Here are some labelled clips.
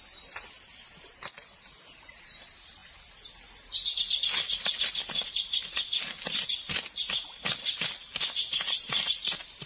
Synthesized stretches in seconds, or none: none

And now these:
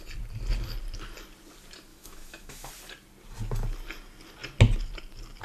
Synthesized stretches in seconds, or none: 1.9-2.7 (autoencoder, DAC-VAE)